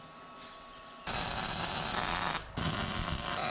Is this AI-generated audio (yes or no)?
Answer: no